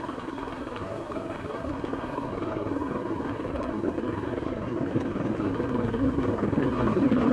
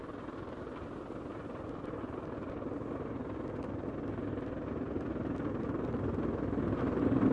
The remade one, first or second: first